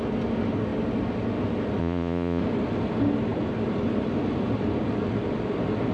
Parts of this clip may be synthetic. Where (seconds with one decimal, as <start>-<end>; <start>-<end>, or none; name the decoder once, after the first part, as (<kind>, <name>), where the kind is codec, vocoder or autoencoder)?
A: 1.8-2.4 (vocoder, Vocos)